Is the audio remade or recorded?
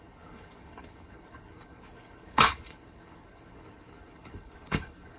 remade